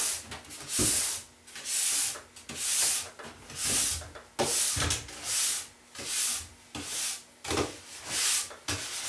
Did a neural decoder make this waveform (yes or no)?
no